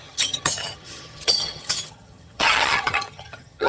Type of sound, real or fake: fake